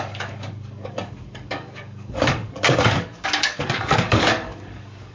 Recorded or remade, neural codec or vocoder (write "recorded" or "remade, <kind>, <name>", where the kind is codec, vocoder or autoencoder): remade, codec, DAC